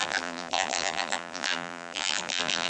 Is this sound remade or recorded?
remade